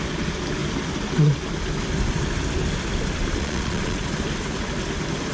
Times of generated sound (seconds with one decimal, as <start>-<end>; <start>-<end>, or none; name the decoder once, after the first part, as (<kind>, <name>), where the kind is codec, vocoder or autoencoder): 3.4-4.0 (vocoder, Vocos)